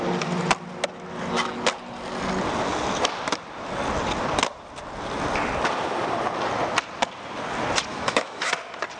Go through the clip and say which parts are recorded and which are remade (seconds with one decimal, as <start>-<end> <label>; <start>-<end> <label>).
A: 0.0-7.9 recorded; 7.9-8.5 remade; 8.5-9.0 recorded